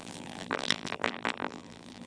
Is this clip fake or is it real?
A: fake